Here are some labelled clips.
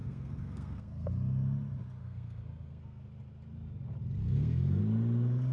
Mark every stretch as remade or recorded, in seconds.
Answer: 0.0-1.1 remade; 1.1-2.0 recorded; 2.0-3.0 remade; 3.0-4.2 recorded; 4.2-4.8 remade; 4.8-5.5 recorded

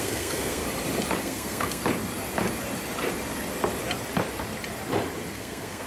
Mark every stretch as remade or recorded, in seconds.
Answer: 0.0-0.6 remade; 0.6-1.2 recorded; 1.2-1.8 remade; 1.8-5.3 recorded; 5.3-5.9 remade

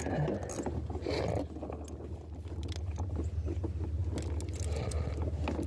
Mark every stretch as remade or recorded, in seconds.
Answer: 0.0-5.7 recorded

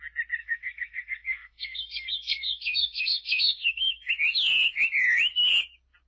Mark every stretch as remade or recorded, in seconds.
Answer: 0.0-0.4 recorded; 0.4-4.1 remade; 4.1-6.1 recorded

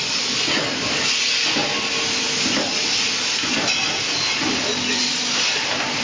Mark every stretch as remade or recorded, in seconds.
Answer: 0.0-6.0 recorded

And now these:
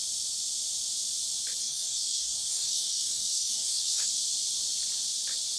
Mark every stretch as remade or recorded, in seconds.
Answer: 0.0-1.6 recorded; 1.6-4.1 remade; 4.1-5.6 recorded